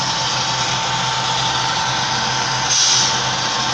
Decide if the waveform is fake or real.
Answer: real